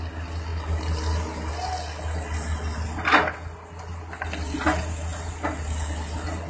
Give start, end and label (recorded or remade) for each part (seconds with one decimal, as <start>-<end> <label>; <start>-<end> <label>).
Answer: 0.0-6.5 recorded